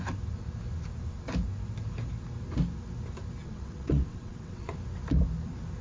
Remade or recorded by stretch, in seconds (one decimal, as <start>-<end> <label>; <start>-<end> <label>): 0.0-3.4 recorded; 3.4-4.7 remade; 4.7-5.8 recorded